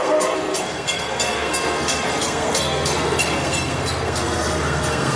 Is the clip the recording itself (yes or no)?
no